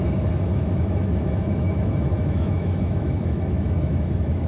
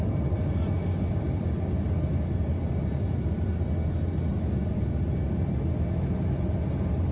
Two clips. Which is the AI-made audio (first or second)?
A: first